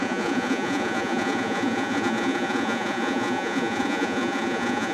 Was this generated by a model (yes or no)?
yes